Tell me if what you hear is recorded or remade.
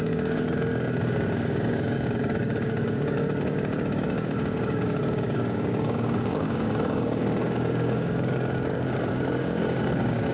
remade